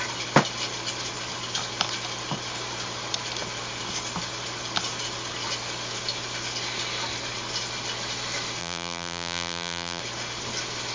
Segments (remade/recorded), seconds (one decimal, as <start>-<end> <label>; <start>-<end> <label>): 0.0-8.6 recorded; 8.6-10.0 remade; 10.0-10.9 recorded